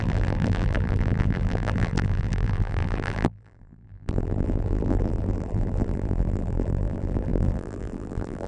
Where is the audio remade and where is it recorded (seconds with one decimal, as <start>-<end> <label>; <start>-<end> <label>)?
0.0-8.5 remade